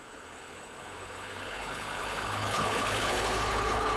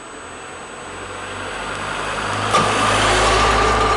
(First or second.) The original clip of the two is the second